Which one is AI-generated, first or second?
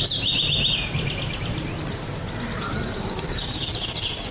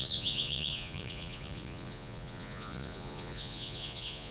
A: second